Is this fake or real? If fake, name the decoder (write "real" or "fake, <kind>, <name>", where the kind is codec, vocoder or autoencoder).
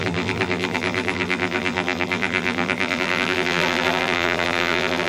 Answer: fake, vocoder, BigVGAN v2